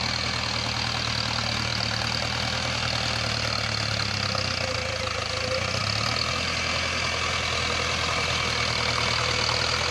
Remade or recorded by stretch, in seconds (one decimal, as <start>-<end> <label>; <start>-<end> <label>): 0.0-9.9 recorded

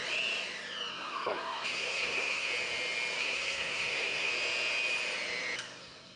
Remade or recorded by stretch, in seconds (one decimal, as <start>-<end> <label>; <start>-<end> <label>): 0.0-0.9 recorded; 0.9-2.5 remade; 2.5-3.2 recorded; 3.2-4.3 remade; 4.3-5.8 recorded; 5.8-6.2 remade

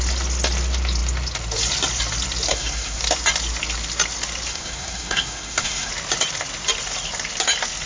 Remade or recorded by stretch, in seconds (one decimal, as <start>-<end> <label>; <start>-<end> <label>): 0.0-2.5 recorded; 2.5-3.0 remade; 3.0-4.5 recorded; 4.5-5.9 remade; 5.9-7.9 recorded